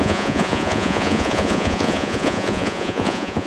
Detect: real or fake fake